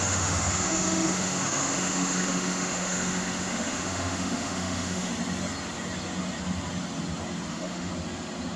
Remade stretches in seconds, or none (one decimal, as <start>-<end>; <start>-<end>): 0.0-5.1; 7.5-7.9